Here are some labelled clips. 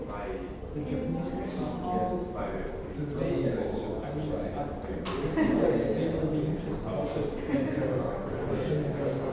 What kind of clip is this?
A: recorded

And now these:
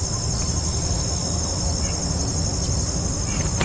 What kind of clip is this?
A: recorded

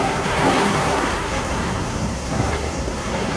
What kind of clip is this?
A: remade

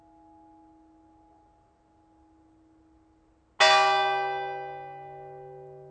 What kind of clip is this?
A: recorded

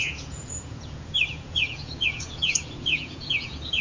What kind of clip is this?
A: remade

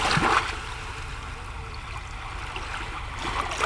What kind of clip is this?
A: recorded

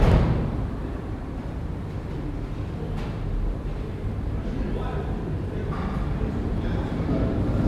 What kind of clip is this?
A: remade